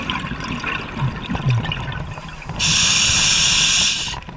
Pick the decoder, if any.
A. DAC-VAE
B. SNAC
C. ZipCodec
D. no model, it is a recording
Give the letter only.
D